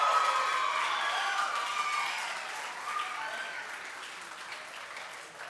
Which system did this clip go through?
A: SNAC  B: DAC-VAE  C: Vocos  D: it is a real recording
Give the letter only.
D